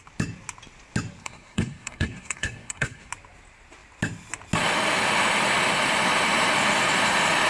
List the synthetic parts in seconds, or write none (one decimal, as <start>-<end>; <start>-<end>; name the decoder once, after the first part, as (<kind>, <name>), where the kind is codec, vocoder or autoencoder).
1.2-3.1 (codec, SNAC)